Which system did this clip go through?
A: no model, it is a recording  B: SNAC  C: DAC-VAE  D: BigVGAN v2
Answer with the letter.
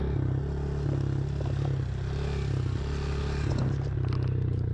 A